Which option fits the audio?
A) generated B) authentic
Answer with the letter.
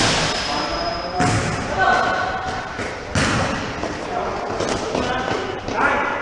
B